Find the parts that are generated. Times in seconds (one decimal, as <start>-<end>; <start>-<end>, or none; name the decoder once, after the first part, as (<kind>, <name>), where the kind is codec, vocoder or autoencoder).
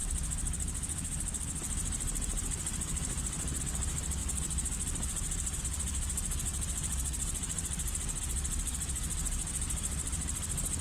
0.0-3.6 (vocoder, BigVGAN v2); 4.2-5.6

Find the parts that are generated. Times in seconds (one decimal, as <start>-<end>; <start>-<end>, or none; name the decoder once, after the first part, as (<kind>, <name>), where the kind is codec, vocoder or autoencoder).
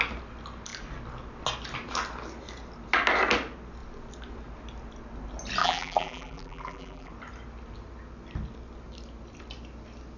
5.6-7.1 (vocoder, BigVGAN v2)